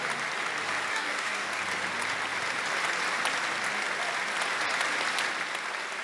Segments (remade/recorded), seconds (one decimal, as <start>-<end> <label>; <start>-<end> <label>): 0.0-0.9 recorded; 0.9-1.6 remade; 1.6-6.0 recorded